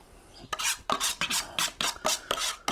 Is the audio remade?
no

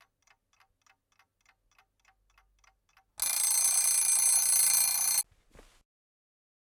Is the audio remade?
no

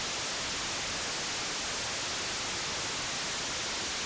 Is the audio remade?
no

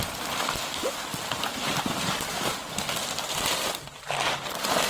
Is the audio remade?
no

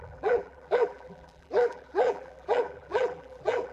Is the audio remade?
yes